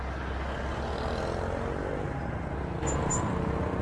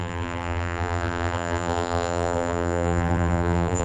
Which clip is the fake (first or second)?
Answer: second